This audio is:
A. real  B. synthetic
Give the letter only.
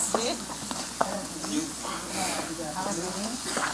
B